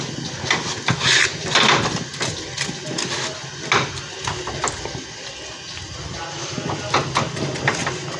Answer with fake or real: real